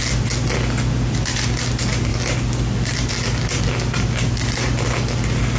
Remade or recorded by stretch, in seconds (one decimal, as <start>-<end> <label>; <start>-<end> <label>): 0.0-5.6 recorded